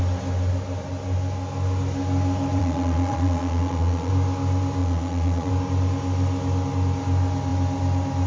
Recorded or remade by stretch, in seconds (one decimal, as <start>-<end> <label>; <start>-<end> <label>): 0.0-2.6 recorded; 2.6-4.1 remade; 4.1-4.8 recorded; 4.8-5.5 remade; 5.5-8.3 recorded

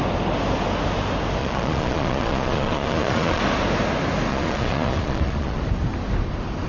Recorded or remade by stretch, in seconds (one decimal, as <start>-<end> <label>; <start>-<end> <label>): 0.0-1.4 recorded; 1.4-3.4 remade; 3.4-4.3 recorded; 4.3-5.6 remade; 5.6-6.7 recorded

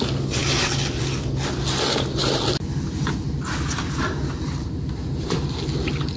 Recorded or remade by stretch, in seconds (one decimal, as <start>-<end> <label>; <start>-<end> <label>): 0.0-6.2 recorded

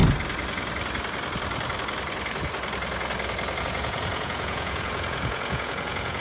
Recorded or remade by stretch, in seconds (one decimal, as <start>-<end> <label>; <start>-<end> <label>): 0.0-3.6 recorded; 3.6-6.2 remade

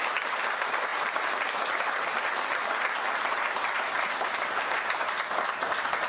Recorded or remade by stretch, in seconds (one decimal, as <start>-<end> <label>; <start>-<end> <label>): 0.0-6.1 recorded

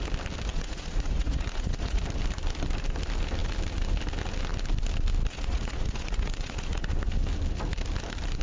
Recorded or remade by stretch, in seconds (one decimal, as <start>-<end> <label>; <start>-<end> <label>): 0.0-0.5 recorded; 0.5-2.0 remade; 2.0-5.3 recorded; 5.3-6.9 remade; 6.9-8.4 recorded

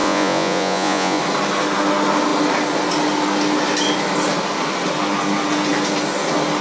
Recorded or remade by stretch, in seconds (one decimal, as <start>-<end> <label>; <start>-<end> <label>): 0.0-1.2 remade; 1.2-6.6 recorded